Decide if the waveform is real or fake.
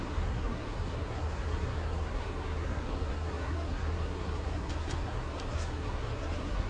fake